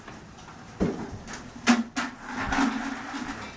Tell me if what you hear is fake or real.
real